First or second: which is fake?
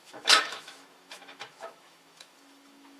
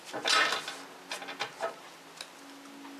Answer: first